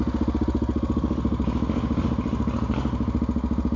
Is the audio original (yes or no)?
yes